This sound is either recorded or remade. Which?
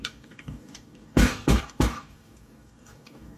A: remade